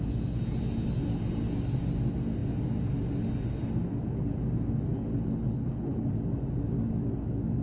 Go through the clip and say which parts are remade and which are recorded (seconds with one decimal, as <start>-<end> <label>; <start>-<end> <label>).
0.0-4.9 recorded; 4.9-6.1 remade; 6.1-7.6 recorded